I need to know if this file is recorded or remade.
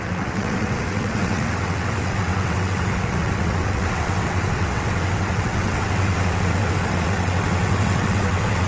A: remade